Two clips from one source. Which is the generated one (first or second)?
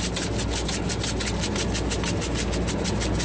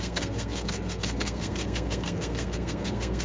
second